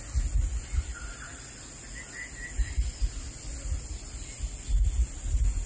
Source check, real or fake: real